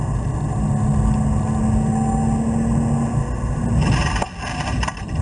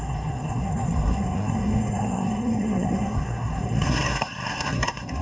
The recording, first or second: first